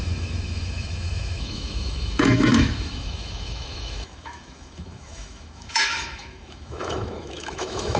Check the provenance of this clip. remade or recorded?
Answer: remade